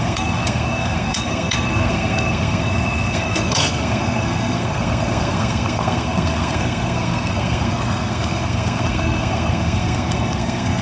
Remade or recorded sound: remade